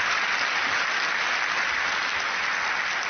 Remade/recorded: recorded